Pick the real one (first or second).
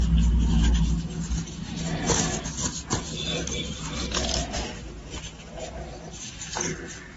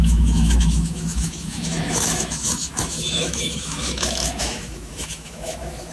first